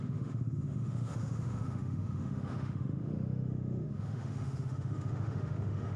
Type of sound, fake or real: fake